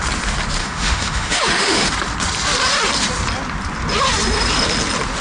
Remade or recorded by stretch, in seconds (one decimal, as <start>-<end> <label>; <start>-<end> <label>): 0.0-0.6 recorded; 0.6-1.9 remade; 1.9-5.2 recorded